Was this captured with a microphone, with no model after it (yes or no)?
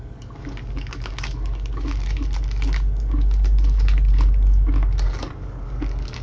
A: no